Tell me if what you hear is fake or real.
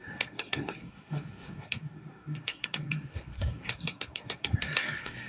fake